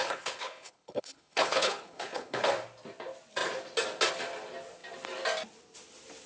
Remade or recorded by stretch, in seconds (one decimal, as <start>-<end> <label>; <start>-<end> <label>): 0.0-2.5 remade; 2.5-6.3 recorded